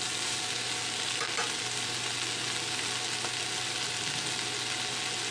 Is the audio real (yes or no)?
yes